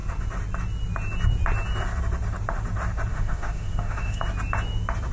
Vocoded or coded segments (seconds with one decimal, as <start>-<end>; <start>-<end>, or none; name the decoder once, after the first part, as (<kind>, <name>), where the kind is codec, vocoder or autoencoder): 3.1-4.2 (autoencoder, DAC-VAE)